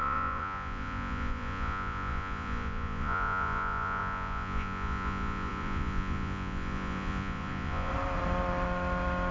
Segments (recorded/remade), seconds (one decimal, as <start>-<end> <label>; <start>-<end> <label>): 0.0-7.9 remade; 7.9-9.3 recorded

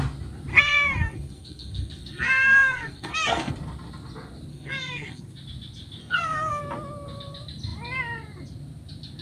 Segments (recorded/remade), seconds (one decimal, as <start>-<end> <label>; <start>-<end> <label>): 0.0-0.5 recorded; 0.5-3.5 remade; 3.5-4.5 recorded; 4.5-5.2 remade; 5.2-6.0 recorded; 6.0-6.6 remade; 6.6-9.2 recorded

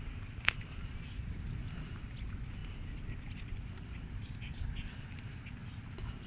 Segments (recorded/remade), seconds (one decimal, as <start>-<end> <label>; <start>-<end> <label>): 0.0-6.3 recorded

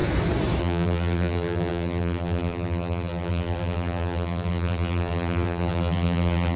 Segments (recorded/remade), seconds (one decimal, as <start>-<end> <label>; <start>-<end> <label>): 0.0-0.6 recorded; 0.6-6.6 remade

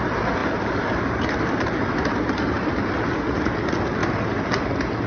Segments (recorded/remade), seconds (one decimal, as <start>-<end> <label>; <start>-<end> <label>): 0.0-0.4 recorded; 0.4-3.5 remade; 3.5-4.0 recorded; 4.0-4.6 remade; 4.6-5.1 recorded